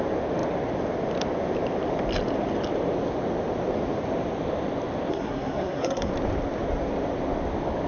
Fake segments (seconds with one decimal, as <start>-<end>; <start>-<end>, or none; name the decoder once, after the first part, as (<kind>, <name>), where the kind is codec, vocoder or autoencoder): 5.1-6.1 (codec, SNAC)